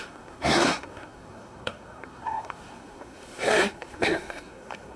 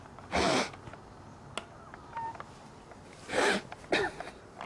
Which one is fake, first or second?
first